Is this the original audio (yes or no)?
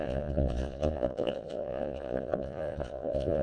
no